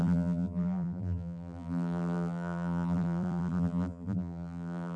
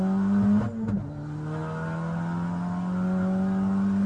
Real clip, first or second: second